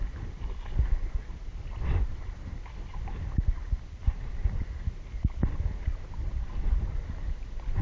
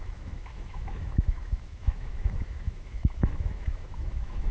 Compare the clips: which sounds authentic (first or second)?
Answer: first